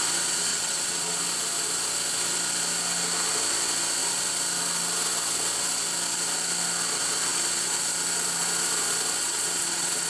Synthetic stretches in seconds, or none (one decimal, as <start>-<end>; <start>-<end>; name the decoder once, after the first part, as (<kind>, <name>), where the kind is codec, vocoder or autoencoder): 0.5-1.2 (vocoder, WaveNeXt); 9.2-10.1

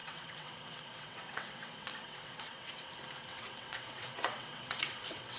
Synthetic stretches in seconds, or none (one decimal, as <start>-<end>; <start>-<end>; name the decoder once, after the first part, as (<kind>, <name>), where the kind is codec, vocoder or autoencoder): 0.0-2.9 (vocoder, WaveNeXt); 3.3-5.4

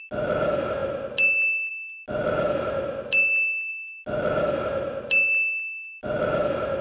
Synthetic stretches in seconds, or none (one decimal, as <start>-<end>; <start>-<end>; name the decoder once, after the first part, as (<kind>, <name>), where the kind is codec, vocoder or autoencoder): none

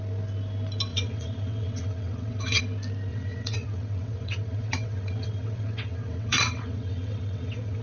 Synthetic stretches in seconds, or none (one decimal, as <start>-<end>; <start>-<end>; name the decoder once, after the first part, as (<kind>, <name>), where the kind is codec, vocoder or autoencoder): 0.9-2.6 (vocoder, WaveNeXt); 3.1-7.8

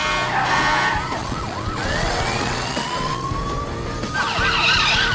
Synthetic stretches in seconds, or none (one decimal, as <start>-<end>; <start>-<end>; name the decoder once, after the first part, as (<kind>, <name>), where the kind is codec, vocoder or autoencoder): 1.2-3.3 (vocoder, WaveNeXt)

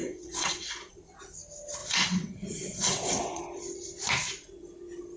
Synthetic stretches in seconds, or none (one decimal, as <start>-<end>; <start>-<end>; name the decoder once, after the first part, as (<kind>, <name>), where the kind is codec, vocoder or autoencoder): 0.0-0.9 (vocoder, WaveNeXt); 1.8-3.4

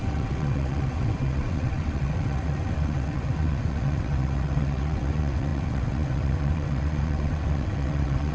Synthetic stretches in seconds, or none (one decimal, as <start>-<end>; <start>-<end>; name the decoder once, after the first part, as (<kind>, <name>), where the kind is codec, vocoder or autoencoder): 0.0-8.3 (vocoder, WaveNeXt)

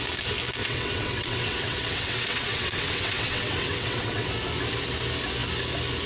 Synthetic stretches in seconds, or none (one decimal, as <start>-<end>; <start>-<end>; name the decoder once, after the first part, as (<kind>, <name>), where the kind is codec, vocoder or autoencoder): 0.6-4.3 (vocoder, WaveNeXt)